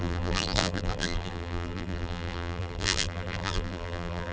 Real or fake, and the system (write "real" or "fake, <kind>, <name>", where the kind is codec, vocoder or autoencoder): fake, vocoder, BigVGAN v2